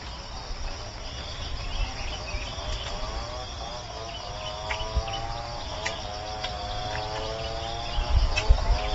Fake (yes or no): no